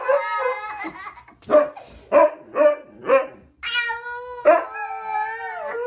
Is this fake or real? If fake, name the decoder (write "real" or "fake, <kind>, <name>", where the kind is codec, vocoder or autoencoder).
real